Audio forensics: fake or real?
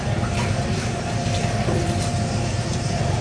real